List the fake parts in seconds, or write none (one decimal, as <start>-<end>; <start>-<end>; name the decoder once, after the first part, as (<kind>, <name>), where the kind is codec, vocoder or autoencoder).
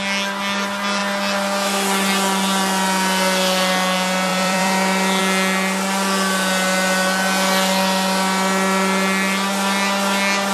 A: 4.3-5.2 (vocoder, BigVGAN v2)